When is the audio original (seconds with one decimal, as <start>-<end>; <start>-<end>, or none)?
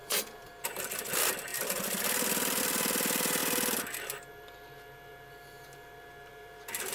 3.4-6.3